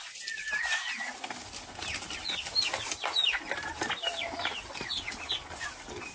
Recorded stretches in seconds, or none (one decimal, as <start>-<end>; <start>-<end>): 0.0-2.9; 3.7-6.1